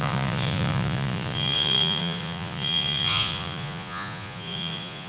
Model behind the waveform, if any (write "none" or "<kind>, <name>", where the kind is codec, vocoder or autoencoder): vocoder, Vocos